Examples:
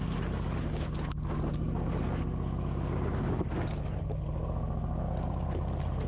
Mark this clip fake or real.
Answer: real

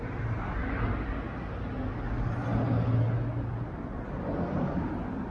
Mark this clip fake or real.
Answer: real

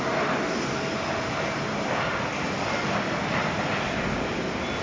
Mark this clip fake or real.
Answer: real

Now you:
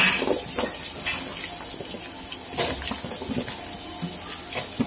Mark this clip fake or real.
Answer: real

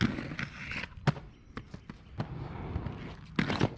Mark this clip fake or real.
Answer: real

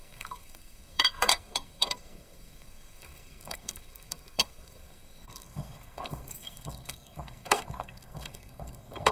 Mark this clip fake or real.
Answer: fake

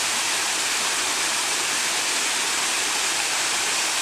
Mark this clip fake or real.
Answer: real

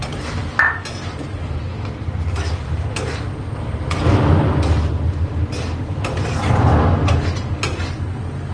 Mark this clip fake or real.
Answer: real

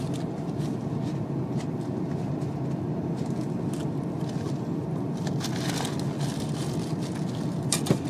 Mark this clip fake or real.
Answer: real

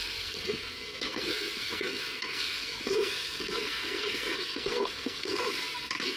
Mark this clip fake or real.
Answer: fake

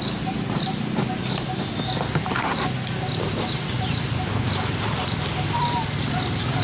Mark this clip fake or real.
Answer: real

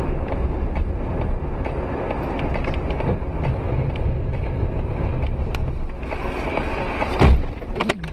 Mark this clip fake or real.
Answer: real